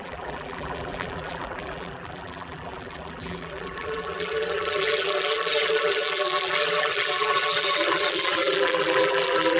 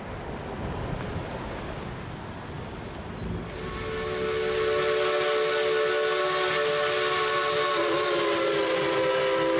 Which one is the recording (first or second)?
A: second